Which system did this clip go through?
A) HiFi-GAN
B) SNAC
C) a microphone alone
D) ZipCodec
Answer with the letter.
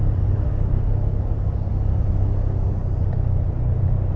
C